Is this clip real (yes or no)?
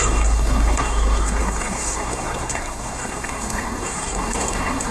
no